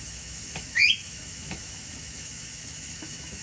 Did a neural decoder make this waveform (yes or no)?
yes